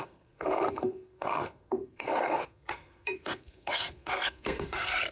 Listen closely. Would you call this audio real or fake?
fake